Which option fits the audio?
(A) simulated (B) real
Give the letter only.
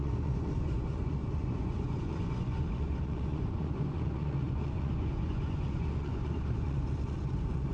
A